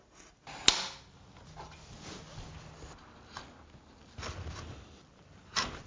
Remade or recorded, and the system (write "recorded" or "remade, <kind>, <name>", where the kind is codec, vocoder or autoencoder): recorded